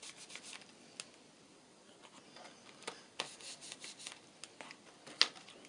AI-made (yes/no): no